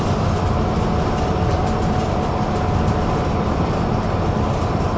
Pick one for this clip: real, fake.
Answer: real